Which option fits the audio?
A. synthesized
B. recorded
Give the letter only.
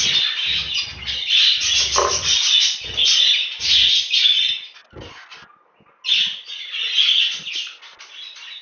B